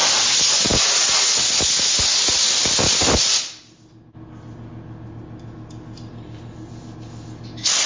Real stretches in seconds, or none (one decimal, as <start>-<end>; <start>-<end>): 0.0-7.9